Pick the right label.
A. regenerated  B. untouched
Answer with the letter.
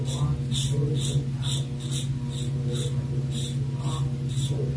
B